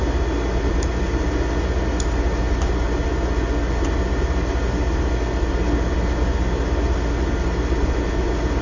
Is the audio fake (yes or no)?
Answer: no